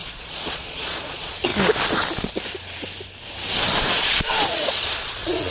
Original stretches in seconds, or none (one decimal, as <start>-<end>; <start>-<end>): 1.5-3.9